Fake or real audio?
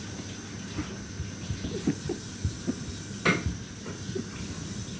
real